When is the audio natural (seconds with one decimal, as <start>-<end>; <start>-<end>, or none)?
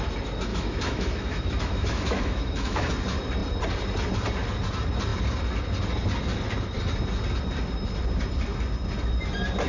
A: 0.0-0.5; 2.9-9.7